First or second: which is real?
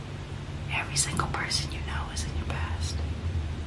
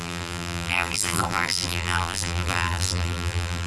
first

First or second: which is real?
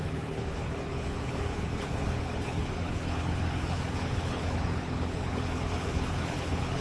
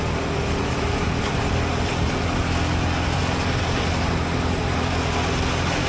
second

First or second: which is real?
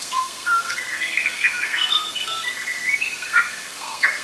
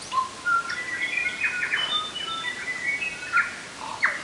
second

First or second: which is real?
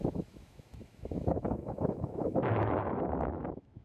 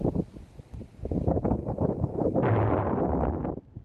second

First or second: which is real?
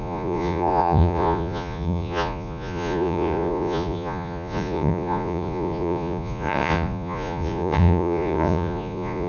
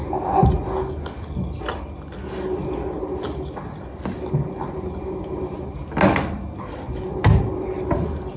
second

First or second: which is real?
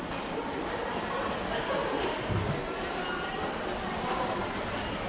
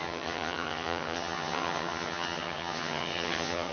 first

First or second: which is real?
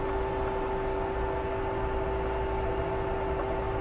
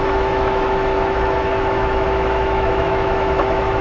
first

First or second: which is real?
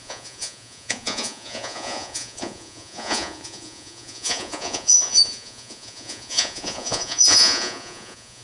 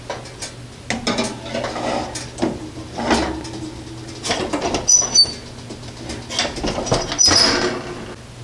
second